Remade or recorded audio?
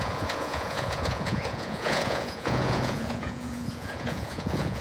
remade